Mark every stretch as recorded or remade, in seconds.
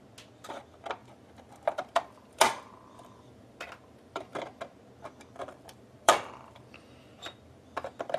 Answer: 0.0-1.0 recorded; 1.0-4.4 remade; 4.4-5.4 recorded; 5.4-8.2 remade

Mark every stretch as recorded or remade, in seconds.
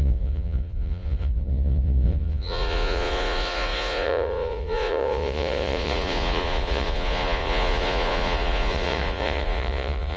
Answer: 0.0-10.2 remade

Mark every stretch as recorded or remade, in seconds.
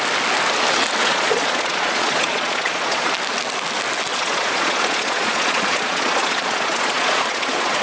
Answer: 0.0-1.0 recorded; 1.0-3.1 remade; 3.1-4.1 recorded; 4.1-7.8 remade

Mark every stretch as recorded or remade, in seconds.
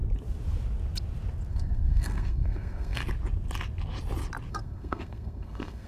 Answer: 0.0-1.5 recorded; 1.5-3.0 remade; 3.0-4.5 recorded; 4.5-5.9 remade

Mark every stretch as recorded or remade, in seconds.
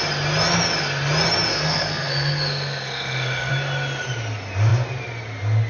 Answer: 0.0-1.5 recorded; 1.5-3.5 remade; 3.5-5.7 recorded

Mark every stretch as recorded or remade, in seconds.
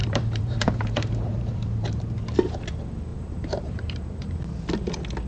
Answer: 0.0-2.2 remade; 2.2-3.1 recorded; 3.1-4.4 remade; 4.4-5.3 recorded